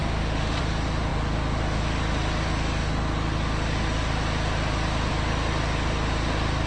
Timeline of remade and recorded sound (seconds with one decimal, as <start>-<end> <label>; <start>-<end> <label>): 0.0-0.6 remade; 0.6-6.7 recorded